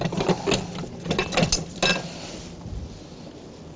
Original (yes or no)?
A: yes